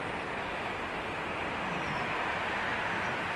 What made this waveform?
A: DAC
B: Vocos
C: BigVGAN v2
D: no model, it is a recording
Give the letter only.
D